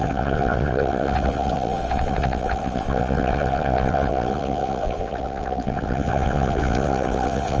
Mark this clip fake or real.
fake